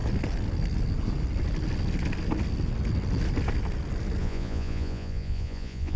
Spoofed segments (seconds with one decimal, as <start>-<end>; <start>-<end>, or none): 4.2-6.0